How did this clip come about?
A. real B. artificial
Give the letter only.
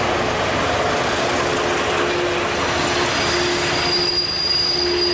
A